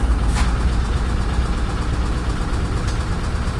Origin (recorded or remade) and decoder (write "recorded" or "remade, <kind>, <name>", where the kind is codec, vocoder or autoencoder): recorded